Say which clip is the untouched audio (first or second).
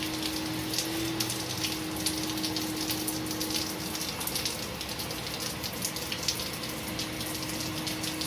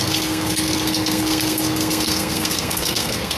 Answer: first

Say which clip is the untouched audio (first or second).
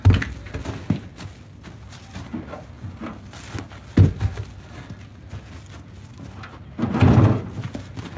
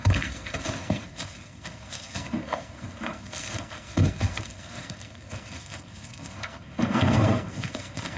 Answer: first